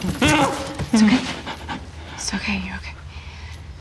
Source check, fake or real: real